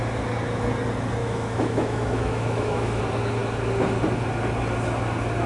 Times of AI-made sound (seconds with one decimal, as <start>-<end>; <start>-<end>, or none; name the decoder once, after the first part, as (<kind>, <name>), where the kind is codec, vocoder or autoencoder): 1.2-3.0 (autoencoder, DAC-VAE)